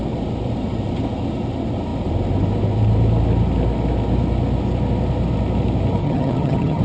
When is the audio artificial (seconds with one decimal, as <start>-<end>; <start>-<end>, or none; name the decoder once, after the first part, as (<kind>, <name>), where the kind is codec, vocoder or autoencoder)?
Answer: 6.0-6.8 (vocoder, HiFi-GAN)